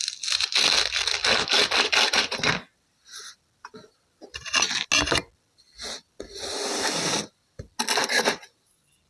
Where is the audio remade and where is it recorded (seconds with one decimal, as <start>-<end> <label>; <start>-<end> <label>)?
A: 0.0-9.1 recorded